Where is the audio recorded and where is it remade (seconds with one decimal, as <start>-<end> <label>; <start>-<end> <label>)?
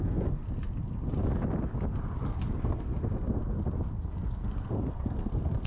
0.0-0.4 remade; 0.4-2.6 recorded; 2.6-3.4 remade; 3.4-4.9 recorded; 4.9-5.7 remade